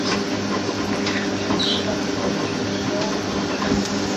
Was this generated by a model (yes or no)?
no